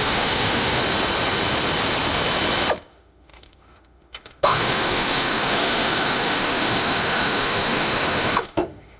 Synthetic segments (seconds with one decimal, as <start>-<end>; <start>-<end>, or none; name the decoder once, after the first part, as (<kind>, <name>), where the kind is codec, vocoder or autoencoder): 0.0-0.8 (autoencoder, DAC-VAE); 2.9-9.0